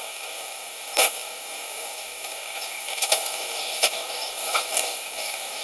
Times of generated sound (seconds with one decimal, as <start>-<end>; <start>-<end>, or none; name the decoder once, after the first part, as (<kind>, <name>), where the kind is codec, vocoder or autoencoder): 0.0-5.6 (codec, DAC)